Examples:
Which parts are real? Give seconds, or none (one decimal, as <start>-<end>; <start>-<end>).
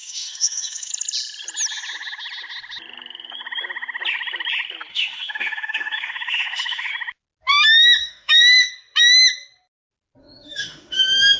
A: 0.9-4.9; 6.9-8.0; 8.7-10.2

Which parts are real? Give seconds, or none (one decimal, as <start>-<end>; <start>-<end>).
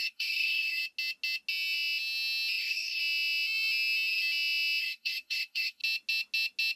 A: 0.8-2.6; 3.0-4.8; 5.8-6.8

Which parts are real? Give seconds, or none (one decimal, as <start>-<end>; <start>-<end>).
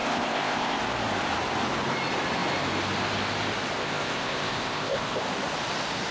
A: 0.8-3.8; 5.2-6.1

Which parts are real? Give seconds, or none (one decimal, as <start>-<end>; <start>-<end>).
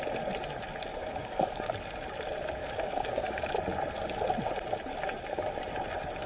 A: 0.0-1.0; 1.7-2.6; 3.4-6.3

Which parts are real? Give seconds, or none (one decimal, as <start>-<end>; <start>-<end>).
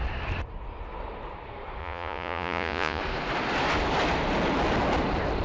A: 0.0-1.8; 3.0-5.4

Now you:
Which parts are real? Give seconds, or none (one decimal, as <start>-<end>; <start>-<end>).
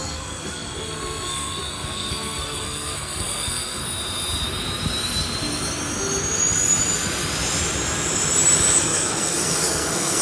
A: 3.8-8.8